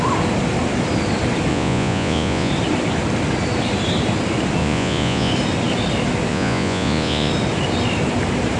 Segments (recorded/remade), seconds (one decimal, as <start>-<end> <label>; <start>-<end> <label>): 0.0-1.5 recorded; 1.5-2.5 remade; 2.5-4.6 recorded; 4.6-5.3 remade; 5.3-6.3 recorded; 6.3-7.3 remade; 7.3-8.6 recorded